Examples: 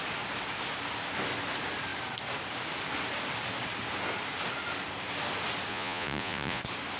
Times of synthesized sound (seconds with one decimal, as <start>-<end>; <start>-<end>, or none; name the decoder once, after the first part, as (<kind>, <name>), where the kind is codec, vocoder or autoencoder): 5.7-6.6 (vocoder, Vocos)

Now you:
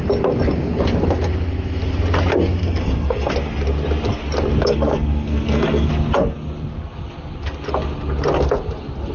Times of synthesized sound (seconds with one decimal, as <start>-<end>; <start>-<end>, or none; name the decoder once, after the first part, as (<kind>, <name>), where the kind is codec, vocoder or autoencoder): 2.6-3.3 (codec, SNAC); 4.6-5.9

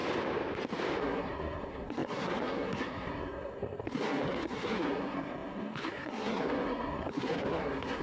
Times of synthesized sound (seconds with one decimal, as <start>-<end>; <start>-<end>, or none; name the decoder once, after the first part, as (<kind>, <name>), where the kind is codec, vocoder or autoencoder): 1.0-8.0 (codec, SNAC)

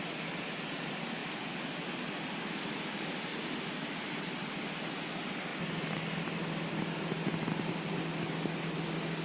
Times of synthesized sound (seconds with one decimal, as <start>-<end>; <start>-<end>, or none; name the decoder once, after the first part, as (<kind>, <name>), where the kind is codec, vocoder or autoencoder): none